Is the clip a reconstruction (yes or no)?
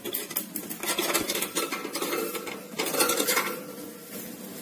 no